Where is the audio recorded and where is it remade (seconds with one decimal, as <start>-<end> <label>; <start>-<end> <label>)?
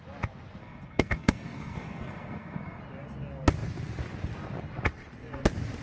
0.0-0.6 recorded; 0.6-2.8 remade; 2.8-5.8 recorded